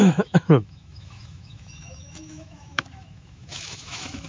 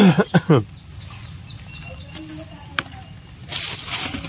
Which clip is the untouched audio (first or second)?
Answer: second